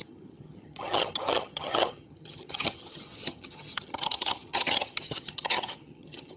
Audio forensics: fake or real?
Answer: fake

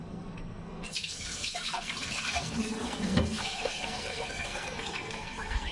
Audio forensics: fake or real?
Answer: fake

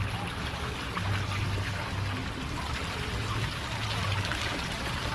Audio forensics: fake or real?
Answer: real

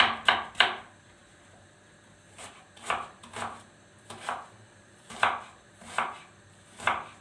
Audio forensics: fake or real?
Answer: fake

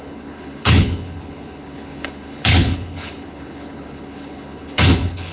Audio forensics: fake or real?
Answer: fake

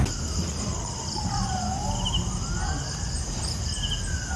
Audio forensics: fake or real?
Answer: real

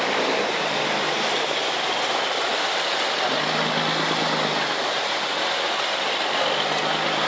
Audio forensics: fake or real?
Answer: real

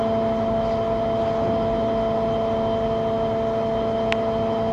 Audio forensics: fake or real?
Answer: real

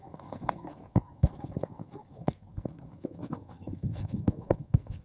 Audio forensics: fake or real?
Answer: fake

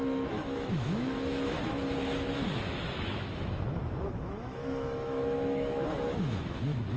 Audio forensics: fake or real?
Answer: fake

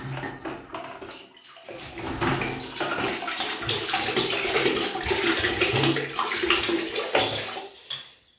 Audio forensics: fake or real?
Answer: real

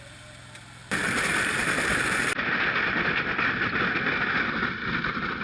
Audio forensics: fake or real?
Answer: real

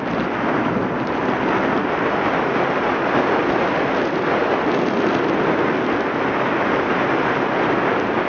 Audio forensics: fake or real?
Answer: real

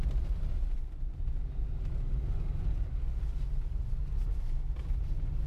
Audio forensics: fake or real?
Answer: real